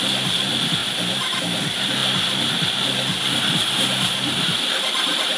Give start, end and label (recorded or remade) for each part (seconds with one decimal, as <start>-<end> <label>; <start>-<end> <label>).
0.0-0.8 recorded; 0.8-1.4 remade; 1.4-5.4 recorded